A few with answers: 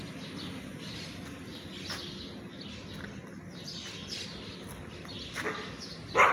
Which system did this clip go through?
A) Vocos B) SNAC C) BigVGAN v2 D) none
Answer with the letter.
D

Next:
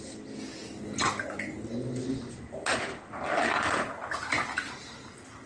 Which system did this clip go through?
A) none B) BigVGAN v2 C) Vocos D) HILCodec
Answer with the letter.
A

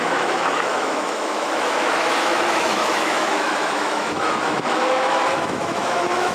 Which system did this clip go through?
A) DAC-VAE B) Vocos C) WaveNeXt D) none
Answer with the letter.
A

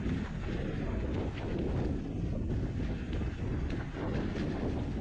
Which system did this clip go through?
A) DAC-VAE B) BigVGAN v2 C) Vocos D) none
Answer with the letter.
D